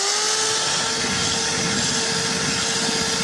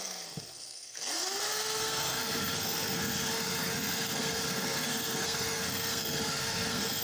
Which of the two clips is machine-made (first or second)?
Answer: second